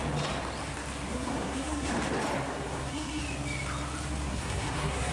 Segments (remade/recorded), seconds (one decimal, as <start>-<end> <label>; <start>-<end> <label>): 0.0-1.1 recorded; 1.1-1.9 remade; 1.9-2.5 recorded; 2.5-3.2 remade; 3.2-4.3 recorded; 4.3-5.1 remade

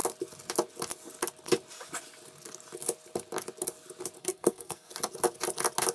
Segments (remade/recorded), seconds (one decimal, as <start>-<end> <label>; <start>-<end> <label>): 0.0-4.2 recorded; 4.2-4.9 remade; 4.9-5.9 recorded

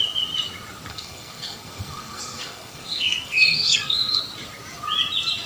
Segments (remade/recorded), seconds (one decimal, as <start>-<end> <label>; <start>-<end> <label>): 0.0-0.9 recorded; 0.9-4.2 remade; 4.2-5.5 recorded

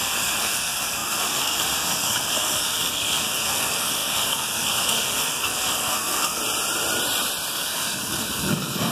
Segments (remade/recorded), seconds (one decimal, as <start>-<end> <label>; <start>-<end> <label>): 0.0-6.4 remade; 6.4-7.5 recorded; 7.5-8.9 remade

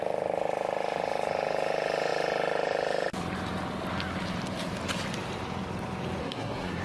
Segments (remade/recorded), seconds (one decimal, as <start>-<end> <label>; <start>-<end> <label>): 0.0-6.2 recorded; 6.2-6.8 remade